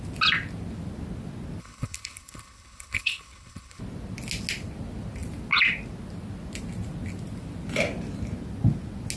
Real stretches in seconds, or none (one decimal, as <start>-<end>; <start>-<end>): 0.0-1.6; 3.8-9.2

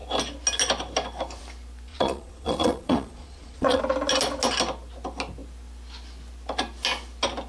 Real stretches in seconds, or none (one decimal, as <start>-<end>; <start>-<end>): 0.0-1.9; 3.8-7.5